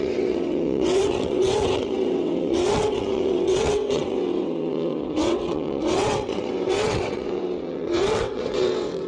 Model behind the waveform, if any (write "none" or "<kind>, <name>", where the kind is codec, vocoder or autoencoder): vocoder, WaveNeXt